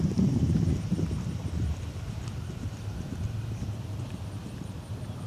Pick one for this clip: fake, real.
fake